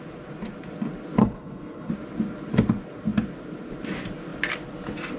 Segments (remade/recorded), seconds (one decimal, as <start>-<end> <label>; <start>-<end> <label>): 0.0-1.2 recorded; 1.2-1.9 remade; 1.9-5.2 recorded